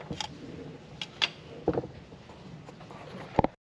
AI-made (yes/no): no